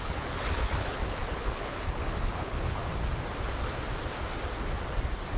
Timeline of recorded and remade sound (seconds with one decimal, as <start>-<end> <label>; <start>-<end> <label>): 0.0-2.8 remade; 2.8-5.4 recorded

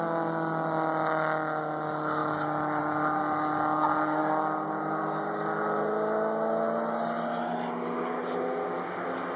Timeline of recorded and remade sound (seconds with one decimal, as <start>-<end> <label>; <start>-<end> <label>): 0.0-9.4 recorded

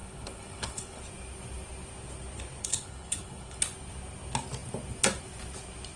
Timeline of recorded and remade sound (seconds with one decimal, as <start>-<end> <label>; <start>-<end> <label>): 0.0-1.0 remade; 1.0-2.6 recorded; 2.6-3.6 remade; 3.6-6.0 recorded

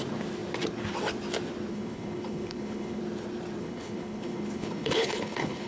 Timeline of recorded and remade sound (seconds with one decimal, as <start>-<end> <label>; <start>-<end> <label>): 0.0-1.7 recorded; 1.7-3.0 remade; 3.0-3.6 recorded; 3.6-5.7 remade

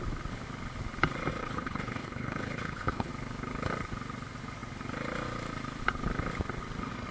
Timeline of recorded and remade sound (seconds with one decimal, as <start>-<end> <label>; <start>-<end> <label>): 0.0-1.4 recorded; 1.4-3.1 remade; 3.1-7.1 recorded

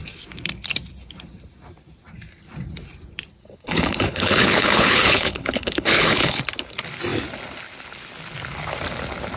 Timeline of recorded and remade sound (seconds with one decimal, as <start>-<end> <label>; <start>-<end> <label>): 0.0-3.4 recorded; 3.4-6.4 remade; 6.4-9.4 recorded

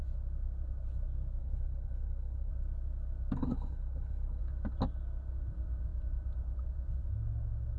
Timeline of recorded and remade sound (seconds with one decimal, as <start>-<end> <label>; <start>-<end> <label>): 0.0-1.4 recorded; 1.4-2.5 remade; 2.5-3.4 recorded; 3.4-4.4 remade; 4.4-7.8 recorded